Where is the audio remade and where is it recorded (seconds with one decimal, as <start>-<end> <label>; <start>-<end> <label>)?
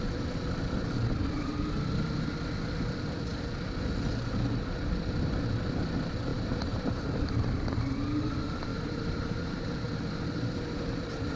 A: 0.0-6.3 recorded; 6.3-7.7 remade; 7.7-8.7 recorded; 8.7-10.0 remade; 10.0-11.4 recorded